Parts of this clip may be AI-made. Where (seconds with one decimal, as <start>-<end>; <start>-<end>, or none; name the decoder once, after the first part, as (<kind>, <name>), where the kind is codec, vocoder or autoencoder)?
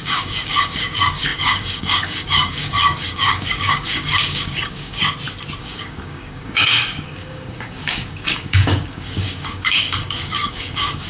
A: 0.0-5.0 (codec, DAC); 5.6-11.1